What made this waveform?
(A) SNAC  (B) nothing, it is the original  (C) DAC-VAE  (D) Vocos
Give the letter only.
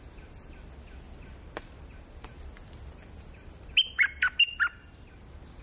B